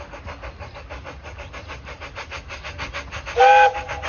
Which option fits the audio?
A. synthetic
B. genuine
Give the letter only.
B